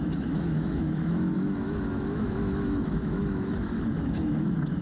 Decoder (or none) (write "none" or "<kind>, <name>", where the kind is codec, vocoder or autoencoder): autoencoder, DAC-VAE